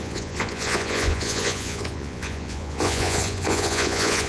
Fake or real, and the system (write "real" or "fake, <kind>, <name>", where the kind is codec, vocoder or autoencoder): fake, vocoder, Vocos